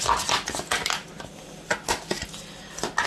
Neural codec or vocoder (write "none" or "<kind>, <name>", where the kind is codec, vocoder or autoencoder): none